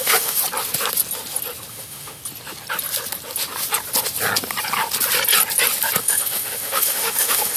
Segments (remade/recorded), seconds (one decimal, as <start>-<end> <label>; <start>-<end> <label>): 0.0-0.4 remade; 0.4-1.7 recorded; 1.7-2.2 remade; 2.2-6.0 recorded; 6.0-7.6 remade